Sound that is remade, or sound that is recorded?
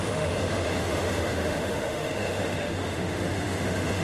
remade